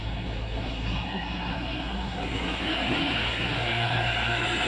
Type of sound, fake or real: fake